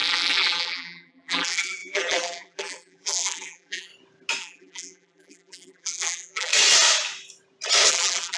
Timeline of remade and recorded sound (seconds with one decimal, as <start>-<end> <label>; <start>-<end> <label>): 0.0-3.9 remade; 3.9-4.4 recorded; 4.4-6.5 remade; 6.5-7.9 recorded; 7.9-8.4 remade